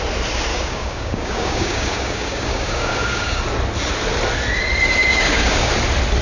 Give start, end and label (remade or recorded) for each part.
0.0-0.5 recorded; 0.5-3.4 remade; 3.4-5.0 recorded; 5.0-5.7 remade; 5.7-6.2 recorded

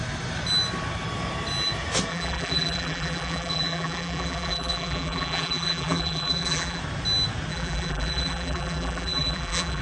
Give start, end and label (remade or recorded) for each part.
0.0-2.1 recorded; 2.1-6.8 remade; 6.8-7.5 recorded; 7.5-9.8 remade